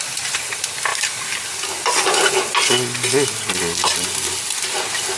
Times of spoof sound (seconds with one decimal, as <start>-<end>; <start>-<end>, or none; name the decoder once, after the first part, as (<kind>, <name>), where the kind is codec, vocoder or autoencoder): none